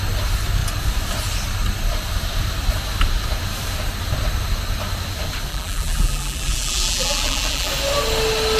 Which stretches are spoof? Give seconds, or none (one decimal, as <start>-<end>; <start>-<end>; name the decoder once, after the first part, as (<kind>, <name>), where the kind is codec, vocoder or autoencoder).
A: 5.5-7.7 (vocoder, BigVGAN v2)